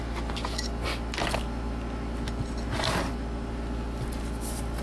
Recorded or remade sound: recorded